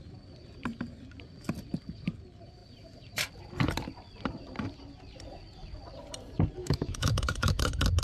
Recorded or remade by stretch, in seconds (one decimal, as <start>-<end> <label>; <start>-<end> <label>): 0.0-6.6 recorded; 6.6-7.6 remade; 7.6-8.0 recorded

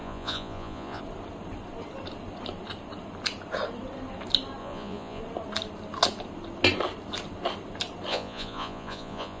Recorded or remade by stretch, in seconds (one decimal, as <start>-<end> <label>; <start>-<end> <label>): 0.0-1.0 remade; 1.0-4.6 recorded; 4.6-5.2 remade; 5.2-8.1 recorded; 8.1-9.4 remade